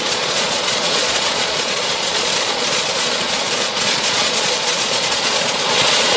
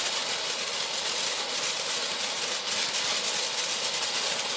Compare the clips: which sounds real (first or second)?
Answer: second